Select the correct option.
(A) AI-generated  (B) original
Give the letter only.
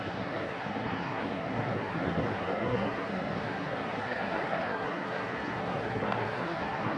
A